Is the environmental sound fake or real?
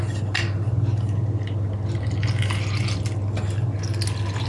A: real